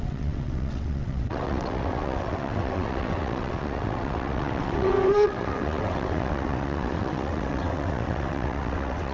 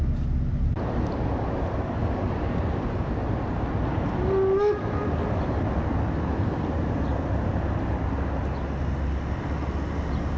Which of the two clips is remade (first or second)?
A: first